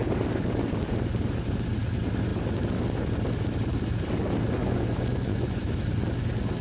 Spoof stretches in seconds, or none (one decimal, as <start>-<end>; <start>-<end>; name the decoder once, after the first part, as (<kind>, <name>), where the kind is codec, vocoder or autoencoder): 4.6-5.6 (vocoder, Vocos)

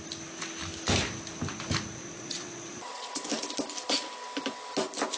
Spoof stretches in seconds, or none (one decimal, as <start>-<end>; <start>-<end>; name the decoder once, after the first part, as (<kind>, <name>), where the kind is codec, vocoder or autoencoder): 2.0-3.3 (vocoder, Vocos)